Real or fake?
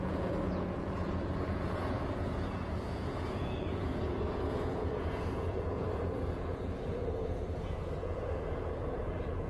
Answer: fake